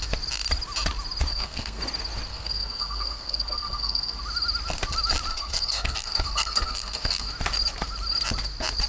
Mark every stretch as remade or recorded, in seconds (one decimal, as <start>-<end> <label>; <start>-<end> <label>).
0.0-1.3 recorded; 1.3-1.8 remade; 1.8-2.3 recorded; 2.3-4.2 remade; 4.2-5.3 recorded; 5.3-7.3 remade; 7.3-8.9 recorded

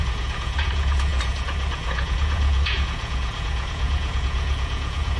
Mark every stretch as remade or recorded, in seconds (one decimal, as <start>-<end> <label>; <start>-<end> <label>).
0.0-5.2 remade

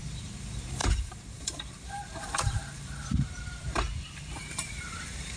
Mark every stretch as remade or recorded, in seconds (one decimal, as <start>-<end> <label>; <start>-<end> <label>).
0.0-5.4 remade

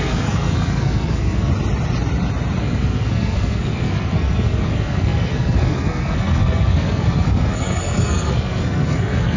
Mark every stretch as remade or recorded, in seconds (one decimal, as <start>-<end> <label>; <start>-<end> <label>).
0.0-1.5 remade; 1.5-2.6 recorded; 2.6-9.4 remade

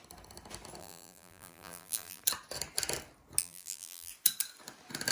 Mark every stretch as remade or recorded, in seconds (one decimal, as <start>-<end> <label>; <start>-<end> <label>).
0.0-0.8 recorded; 0.8-2.2 remade; 2.2-3.4 recorded; 3.4-4.1 remade; 4.1-5.1 recorded

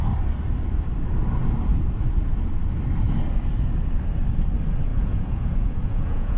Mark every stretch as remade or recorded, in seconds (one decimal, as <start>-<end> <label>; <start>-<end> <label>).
0.0-4.9 recorded; 4.9-6.4 remade